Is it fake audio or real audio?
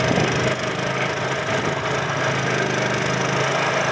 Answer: real